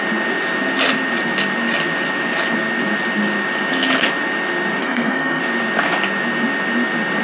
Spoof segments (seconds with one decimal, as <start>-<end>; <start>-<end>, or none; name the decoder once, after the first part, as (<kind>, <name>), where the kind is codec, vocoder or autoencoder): 4.8-5.4 (codec, SNAC)